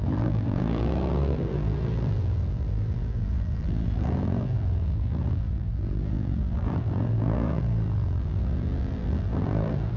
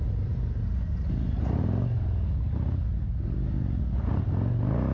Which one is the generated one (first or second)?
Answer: first